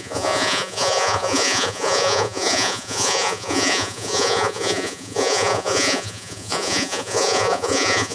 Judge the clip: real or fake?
fake